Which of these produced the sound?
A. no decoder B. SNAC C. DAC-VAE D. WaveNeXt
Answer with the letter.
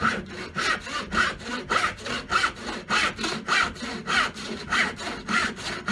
A